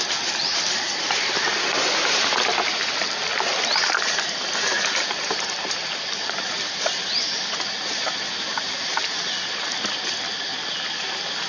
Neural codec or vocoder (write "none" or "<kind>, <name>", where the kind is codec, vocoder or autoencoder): none